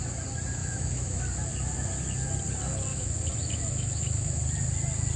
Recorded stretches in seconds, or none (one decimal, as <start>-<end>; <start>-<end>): 0.0-0.6; 1.2-2.9; 4.4-5.2